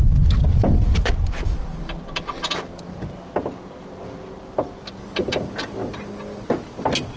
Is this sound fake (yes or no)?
no